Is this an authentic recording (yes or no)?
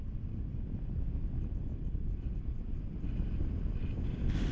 yes